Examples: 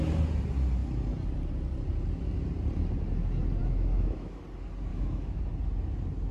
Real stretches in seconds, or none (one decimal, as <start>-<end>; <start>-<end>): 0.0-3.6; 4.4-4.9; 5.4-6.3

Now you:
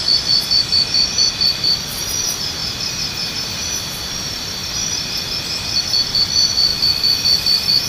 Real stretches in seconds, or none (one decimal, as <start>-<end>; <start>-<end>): 0.0-7.9

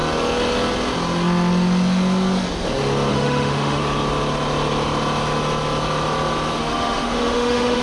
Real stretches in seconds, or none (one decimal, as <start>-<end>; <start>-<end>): 0.0-3.1; 3.8-6.6